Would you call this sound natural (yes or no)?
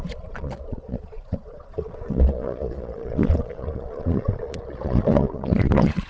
no